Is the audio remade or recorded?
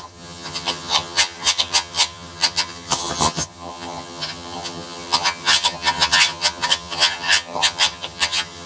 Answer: remade